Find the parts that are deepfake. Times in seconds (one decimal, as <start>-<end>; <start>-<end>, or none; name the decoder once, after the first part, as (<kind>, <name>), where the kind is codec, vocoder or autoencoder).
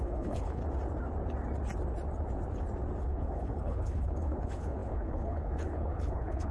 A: 0.0-0.6 (codec, HILCodec); 3.0-6.5